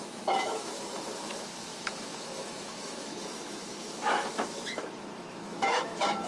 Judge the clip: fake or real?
fake